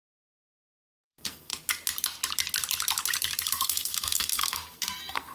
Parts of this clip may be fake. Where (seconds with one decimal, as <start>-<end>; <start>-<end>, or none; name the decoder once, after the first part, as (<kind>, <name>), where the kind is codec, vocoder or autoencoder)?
0.0-1.5 (codec, SNAC); 3.5-5.3